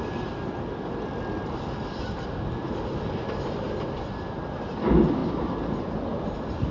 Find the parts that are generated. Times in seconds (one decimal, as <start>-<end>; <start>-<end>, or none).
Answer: none